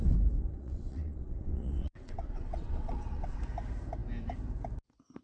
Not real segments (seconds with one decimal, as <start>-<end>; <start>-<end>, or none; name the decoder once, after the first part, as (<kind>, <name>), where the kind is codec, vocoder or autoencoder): 0.5-3.4 (vocoder, WaveNeXt)